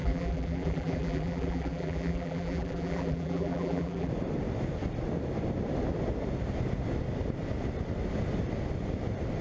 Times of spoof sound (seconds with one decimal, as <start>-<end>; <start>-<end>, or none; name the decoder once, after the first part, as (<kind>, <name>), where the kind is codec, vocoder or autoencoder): 0.0-4.1 (vocoder, BigVGAN v2)